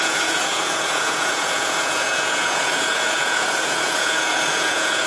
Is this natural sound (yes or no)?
no